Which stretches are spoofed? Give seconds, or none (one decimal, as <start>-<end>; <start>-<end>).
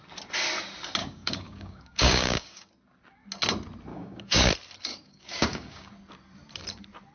1.0-2.7; 3.9-4.5; 4.9-5.9